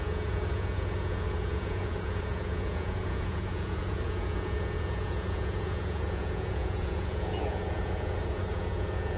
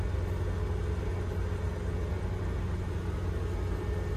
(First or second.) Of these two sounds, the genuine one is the second